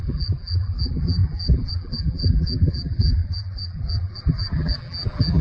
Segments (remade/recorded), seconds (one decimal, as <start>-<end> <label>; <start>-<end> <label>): 0.0-5.4 remade